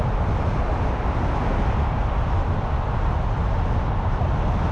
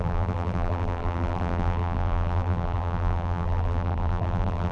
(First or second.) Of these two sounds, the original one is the first